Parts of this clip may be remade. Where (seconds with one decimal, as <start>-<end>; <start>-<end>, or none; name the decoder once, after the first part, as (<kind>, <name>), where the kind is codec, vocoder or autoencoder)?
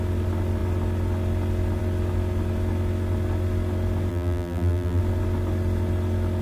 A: 4.1-5.0 (vocoder, BigVGAN v2)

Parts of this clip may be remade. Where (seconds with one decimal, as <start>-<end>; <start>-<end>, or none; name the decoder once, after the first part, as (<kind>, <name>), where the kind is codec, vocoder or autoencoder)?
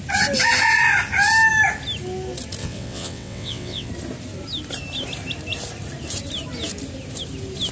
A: 2.6-3.9 (vocoder, WaveNeXt)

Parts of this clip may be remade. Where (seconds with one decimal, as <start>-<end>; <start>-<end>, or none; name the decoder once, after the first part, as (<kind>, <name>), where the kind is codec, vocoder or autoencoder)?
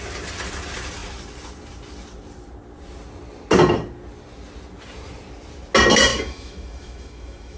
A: 6.1-7.6 (autoencoder, DAC-VAE)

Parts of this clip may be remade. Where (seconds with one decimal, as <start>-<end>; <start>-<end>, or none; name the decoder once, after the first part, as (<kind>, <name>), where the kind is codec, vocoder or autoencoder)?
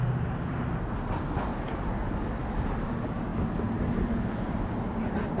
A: none